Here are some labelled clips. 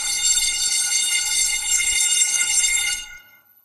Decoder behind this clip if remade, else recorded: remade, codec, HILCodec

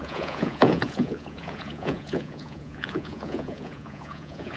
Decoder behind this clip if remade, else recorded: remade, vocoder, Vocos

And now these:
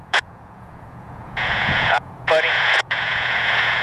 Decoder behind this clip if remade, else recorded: remade, vocoder, Vocos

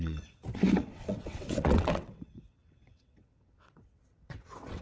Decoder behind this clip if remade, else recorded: remade, vocoder, WaveNeXt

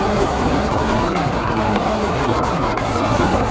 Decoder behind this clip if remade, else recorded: remade, codec, SNAC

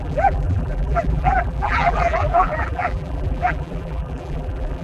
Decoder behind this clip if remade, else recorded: remade, vocoder, BigVGAN v2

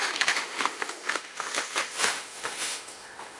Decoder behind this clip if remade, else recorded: remade, autoencoder, DAC-VAE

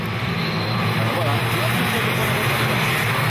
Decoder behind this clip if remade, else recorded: recorded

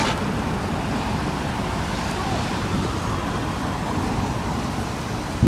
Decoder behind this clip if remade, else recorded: remade, vocoder, BigVGAN v2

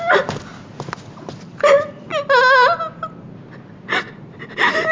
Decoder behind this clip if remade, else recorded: recorded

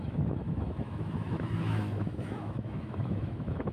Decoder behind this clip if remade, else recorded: remade, autoencoder, DAC-VAE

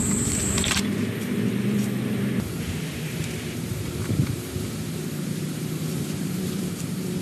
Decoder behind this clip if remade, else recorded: remade, vocoder, BigVGAN v2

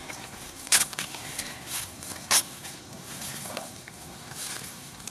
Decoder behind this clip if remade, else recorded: remade, codec, SNAC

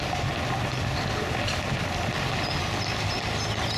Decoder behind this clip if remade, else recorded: recorded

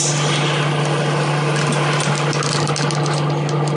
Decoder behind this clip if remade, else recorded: recorded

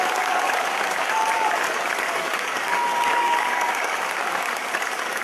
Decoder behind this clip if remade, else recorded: remade, codec, DAC